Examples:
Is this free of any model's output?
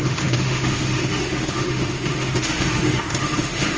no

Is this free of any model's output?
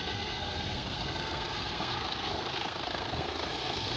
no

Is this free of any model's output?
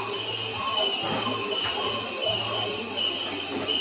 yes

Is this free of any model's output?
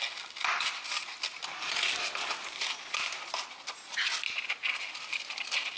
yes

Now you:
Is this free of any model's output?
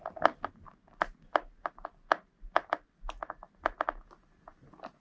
yes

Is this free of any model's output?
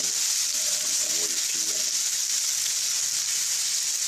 yes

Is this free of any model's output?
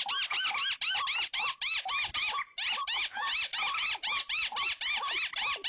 yes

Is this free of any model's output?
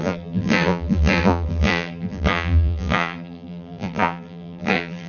no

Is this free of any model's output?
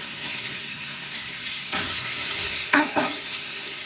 no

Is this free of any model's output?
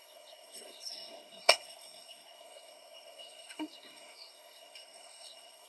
no